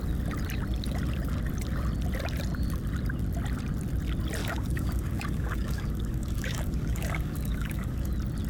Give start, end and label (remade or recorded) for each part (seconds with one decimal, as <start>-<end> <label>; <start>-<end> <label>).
0.0-4.4 recorded; 4.4-8.1 remade; 8.1-8.5 recorded